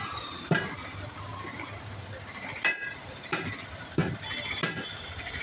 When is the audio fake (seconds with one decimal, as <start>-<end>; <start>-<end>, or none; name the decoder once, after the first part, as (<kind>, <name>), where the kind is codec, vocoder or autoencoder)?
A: 0.0-1.3 (vocoder, BigVGAN v2); 1.9-4.0; 4.5-5.4